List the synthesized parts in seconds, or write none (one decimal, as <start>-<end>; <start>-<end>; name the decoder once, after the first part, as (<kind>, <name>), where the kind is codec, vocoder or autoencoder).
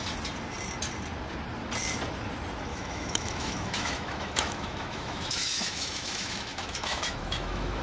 2.7-7.8 (autoencoder, DAC-VAE)